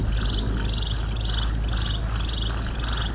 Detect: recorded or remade recorded